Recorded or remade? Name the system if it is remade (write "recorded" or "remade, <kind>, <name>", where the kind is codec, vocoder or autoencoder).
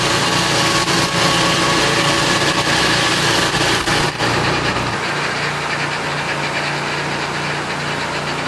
recorded